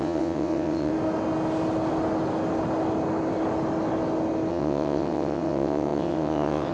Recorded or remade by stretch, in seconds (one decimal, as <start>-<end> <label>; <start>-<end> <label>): 0.0-0.9 remade; 0.9-4.5 recorded; 4.5-6.7 remade